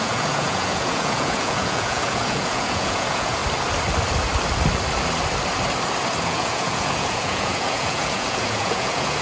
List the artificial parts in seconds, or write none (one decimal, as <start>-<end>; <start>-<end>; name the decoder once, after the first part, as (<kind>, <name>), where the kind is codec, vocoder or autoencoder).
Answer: 0.0-3.4 (vocoder, Vocos); 6.2-9.2